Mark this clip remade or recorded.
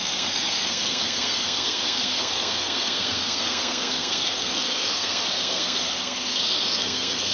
remade